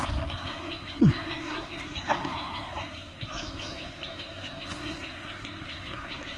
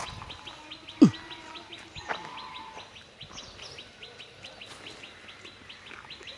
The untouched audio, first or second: second